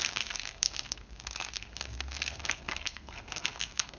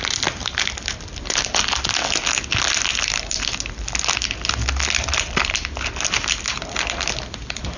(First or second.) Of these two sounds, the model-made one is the first